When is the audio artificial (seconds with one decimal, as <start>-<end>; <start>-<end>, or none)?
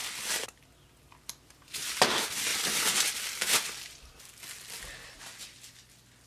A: none